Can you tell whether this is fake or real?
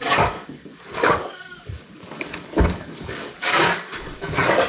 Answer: fake